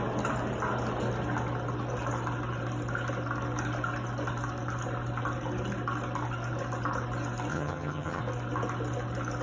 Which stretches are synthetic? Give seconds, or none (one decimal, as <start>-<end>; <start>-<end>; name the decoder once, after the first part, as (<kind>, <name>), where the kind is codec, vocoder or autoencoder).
7.5-8.2 (vocoder, HiFi-GAN)

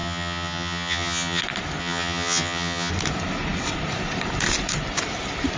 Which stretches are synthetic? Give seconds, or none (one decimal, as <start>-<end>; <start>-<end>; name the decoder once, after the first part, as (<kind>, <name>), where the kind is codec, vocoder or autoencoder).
0.0-1.4 (vocoder, HiFi-GAN); 1.8-2.9

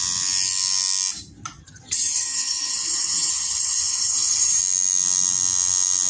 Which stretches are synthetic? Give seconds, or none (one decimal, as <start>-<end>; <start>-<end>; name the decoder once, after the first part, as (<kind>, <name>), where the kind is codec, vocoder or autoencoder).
1.6-4.6 (vocoder, HiFi-GAN)

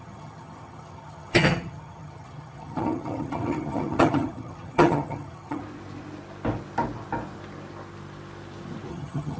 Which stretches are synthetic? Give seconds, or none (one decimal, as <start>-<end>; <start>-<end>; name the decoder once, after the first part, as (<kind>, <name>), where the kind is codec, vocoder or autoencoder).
0.0-5.6 (vocoder, HiFi-GAN); 8.9-9.4

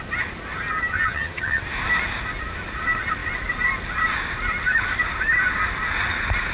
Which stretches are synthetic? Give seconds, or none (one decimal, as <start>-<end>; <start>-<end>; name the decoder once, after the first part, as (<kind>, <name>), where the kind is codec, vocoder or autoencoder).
0.9-1.6 (vocoder, HiFi-GAN)

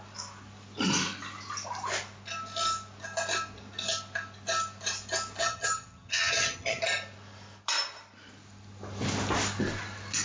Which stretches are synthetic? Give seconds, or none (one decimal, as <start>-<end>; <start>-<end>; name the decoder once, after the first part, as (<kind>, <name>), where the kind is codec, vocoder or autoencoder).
5.4-6.8 (vocoder, HiFi-GAN)

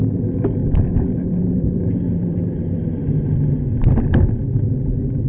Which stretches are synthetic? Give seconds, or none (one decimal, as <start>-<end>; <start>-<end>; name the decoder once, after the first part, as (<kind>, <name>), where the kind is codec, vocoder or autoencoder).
none

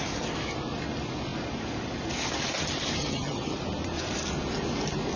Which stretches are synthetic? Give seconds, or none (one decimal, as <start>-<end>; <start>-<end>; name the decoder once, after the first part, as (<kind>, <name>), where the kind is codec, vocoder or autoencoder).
3.0-3.6 (vocoder, HiFi-GAN)